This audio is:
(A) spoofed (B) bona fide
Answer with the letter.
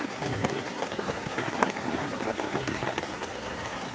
A